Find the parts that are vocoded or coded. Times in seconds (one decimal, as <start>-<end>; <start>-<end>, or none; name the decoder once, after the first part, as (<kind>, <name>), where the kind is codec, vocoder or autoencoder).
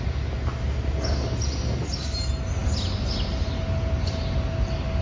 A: none